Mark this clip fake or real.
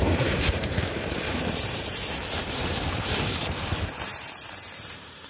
fake